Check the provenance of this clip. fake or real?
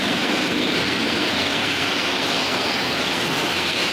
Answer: fake